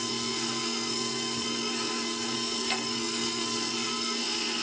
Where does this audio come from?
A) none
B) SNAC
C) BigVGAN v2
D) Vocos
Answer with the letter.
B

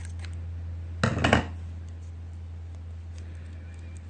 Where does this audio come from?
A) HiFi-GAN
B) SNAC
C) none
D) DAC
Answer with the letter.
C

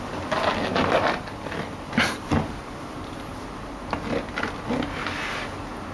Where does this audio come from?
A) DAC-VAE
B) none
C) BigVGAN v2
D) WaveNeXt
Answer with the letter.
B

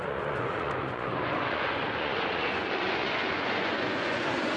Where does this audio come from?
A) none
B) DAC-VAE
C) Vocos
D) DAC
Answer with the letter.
C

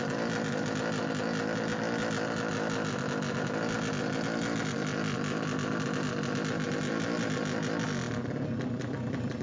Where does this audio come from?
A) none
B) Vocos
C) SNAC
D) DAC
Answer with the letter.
A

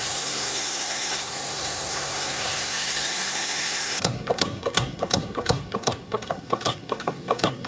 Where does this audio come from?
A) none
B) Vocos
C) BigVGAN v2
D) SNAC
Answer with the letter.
D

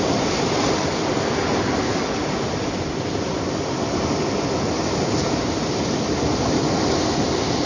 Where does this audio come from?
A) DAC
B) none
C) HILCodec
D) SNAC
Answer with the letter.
B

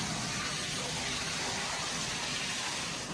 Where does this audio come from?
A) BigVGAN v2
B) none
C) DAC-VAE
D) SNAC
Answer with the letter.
B